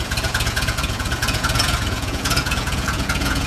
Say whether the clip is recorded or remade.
remade